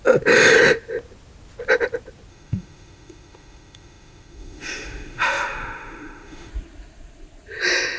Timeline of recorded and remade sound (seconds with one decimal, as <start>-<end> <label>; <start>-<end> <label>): 0.0-2.3 recorded; 2.3-6.5 remade; 6.5-8.0 recorded